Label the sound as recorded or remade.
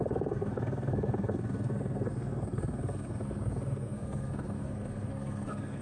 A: remade